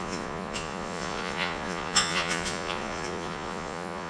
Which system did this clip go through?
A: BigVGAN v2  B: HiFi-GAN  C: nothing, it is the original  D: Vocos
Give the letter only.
D